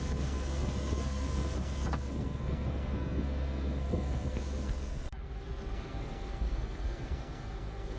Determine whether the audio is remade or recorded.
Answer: remade